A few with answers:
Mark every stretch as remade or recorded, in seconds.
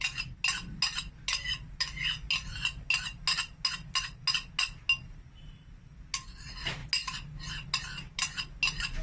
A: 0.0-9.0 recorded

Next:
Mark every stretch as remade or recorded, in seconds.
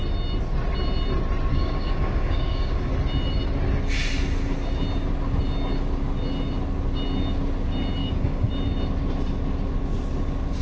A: 0.0-1.5 recorded; 1.5-2.9 remade; 2.9-8.0 recorded; 8.0-8.5 remade; 8.5-10.6 recorded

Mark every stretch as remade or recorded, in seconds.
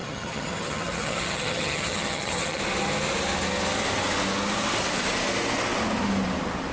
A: 0.0-2.6 remade; 2.6-6.7 recorded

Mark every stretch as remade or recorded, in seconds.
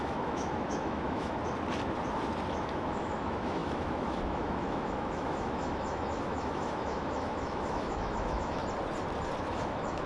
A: 0.0-1.4 remade; 1.4-2.5 recorded; 2.5-8.6 remade; 8.6-9.4 recorded; 9.4-10.1 remade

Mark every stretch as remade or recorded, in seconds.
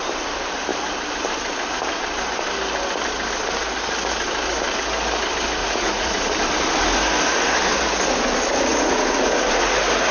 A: 0.0-5.6 recorded; 5.6-6.2 remade; 6.2-8.7 recorded; 8.7-10.1 remade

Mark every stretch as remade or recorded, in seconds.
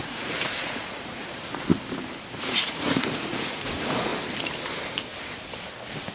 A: 0.0-1.7 remade; 1.7-2.3 recorded; 2.3-4.1 remade; 4.1-6.1 recorded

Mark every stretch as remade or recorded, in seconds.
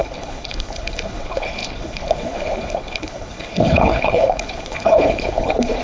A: 0.0-5.8 remade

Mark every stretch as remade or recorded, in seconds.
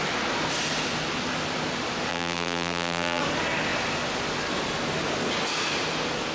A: 0.0-2.1 recorded; 2.1-3.2 remade; 3.2-6.3 recorded